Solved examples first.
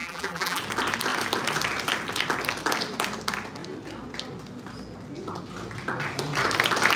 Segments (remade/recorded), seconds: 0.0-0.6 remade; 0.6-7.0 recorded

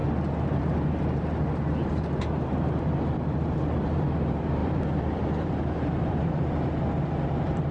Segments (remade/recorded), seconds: 0.0-2.8 recorded; 2.8-7.7 remade

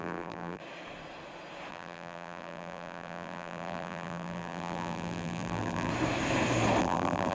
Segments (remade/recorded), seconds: 0.0-0.6 remade; 0.6-1.7 recorded; 1.7-5.9 remade; 5.9-6.8 recorded; 6.8-7.3 remade